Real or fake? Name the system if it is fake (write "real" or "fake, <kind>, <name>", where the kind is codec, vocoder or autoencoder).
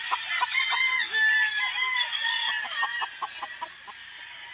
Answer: real